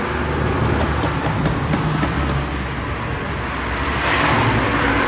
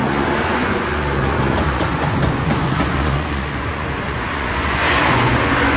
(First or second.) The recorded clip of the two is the first